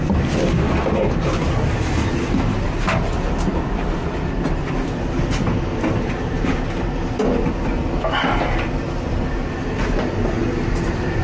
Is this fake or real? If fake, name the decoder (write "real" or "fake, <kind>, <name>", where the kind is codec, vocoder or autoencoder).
real